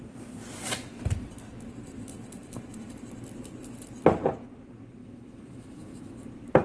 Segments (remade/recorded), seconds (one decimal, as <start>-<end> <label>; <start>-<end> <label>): 0.0-5.0 recorded; 5.0-6.1 remade; 6.1-6.6 recorded